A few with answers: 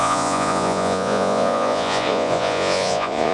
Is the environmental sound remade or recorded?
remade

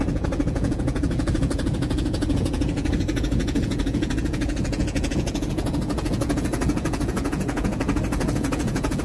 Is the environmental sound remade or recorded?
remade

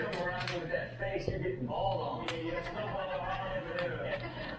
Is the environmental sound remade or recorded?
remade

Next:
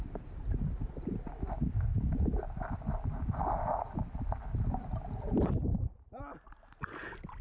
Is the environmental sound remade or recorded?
recorded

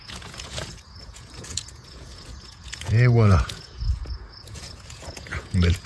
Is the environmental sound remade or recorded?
remade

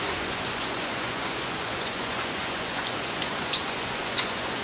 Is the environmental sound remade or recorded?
remade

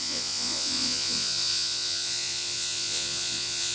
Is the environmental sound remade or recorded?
remade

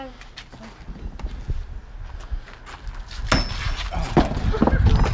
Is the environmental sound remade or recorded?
recorded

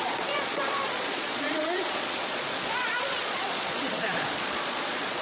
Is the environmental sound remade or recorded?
remade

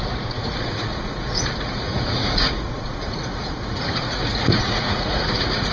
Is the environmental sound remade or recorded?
remade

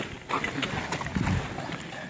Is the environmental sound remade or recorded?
recorded